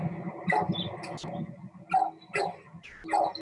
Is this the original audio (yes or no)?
yes